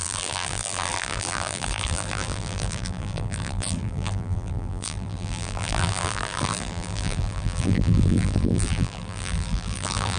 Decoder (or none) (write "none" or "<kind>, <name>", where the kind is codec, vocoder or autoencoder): vocoder, BigVGAN v2